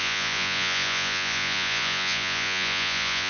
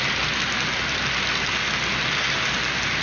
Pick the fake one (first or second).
first